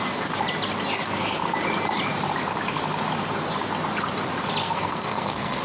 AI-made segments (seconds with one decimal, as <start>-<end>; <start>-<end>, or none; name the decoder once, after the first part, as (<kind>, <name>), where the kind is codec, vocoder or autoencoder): 4.6-5.6 (codec, SNAC)